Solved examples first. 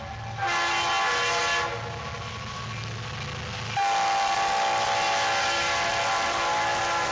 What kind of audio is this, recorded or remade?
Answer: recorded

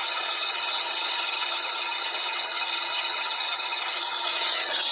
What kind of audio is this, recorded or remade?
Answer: remade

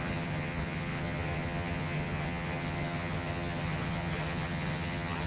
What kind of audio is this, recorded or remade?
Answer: remade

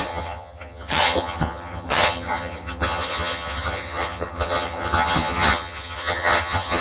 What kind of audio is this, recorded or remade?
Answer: remade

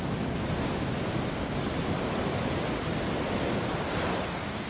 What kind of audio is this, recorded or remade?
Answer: recorded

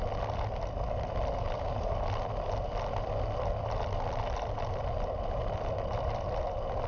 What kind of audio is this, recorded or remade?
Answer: recorded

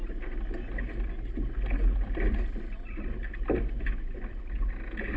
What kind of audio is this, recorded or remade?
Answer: recorded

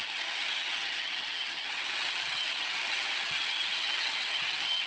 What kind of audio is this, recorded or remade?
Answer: remade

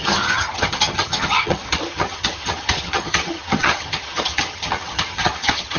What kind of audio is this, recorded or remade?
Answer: remade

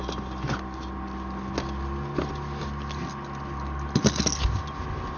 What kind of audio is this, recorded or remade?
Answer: recorded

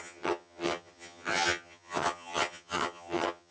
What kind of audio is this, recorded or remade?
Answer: remade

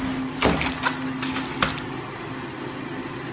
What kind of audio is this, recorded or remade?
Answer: recorded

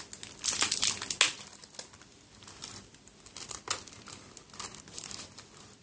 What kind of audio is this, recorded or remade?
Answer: recorded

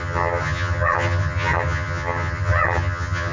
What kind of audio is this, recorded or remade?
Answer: remade